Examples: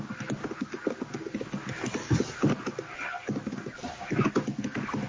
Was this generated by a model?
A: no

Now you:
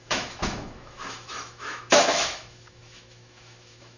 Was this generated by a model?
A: yes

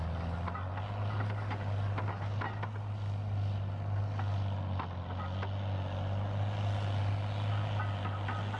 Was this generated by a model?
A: no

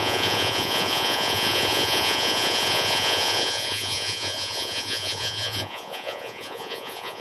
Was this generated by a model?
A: yes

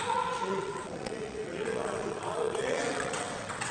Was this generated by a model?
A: yes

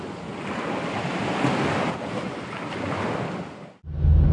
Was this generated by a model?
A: no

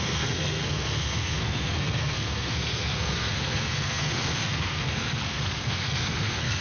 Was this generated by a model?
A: yes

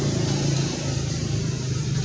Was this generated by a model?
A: no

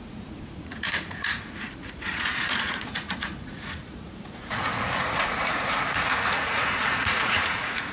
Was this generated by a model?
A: yes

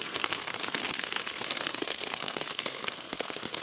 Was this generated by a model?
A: yes